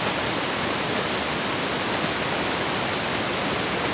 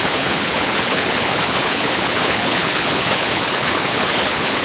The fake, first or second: second